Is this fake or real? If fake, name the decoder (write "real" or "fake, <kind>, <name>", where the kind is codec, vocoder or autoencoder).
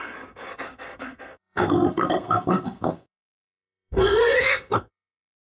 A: fake, codec, SNAC